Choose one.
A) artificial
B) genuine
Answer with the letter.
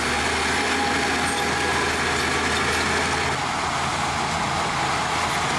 B